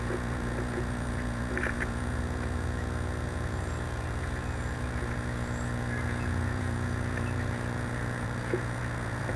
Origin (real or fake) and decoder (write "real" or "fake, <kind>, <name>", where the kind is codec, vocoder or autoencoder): fake, vocoder, Vocos